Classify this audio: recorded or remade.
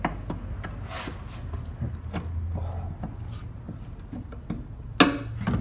recorded